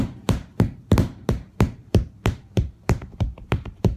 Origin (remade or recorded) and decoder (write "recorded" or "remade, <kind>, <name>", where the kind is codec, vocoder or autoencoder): remade, vocoder, BigVGAN v2